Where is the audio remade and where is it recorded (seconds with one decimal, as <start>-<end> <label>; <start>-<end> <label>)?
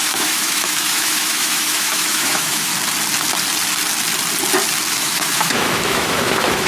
0.0-2.7 remade; 2.7-4.9 recorded; 4.9-6.7 remade